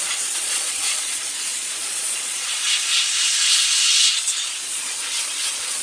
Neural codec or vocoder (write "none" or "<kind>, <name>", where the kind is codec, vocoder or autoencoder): vocoder, Vocos